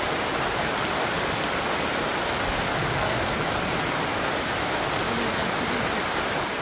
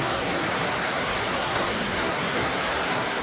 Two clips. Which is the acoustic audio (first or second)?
first